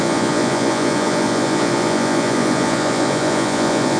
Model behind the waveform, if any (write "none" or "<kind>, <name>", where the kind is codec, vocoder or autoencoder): vocoder, Vocos